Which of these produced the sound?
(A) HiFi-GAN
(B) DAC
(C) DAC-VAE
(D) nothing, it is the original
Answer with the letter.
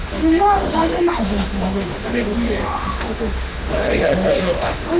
C